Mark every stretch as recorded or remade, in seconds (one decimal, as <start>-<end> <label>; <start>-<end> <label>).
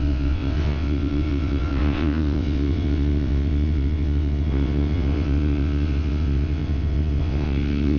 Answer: 0.0-8.0 remade